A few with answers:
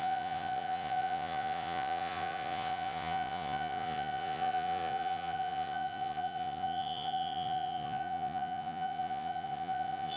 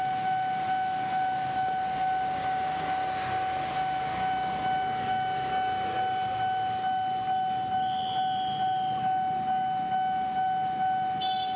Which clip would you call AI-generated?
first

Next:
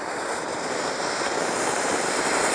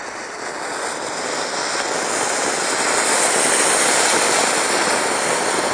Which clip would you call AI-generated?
first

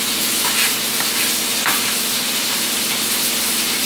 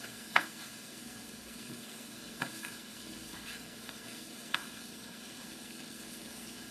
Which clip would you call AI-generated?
second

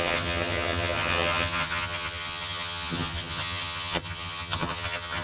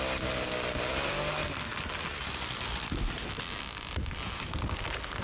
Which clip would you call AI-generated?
first